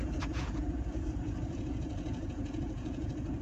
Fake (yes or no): yes